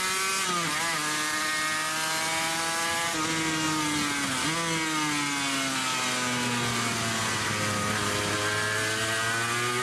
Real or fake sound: real